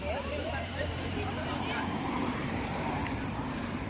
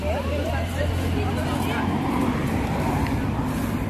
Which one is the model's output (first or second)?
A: first